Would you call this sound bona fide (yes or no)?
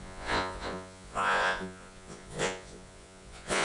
no